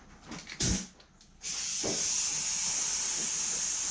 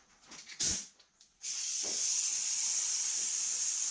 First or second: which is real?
first